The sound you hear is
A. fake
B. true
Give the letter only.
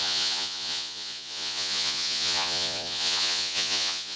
A